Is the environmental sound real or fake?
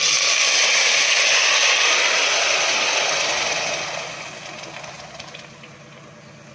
real